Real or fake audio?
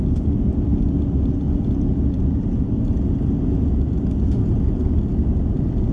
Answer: real